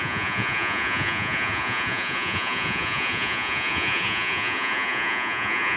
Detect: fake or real fake